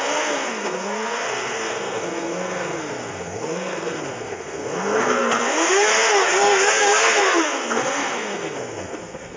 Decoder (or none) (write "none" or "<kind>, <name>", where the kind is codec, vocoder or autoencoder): codec, SNAC